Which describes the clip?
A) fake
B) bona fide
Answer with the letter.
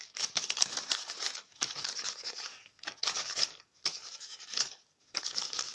A